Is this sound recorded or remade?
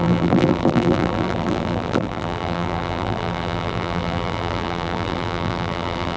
remade